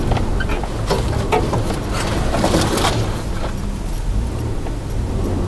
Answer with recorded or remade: recorded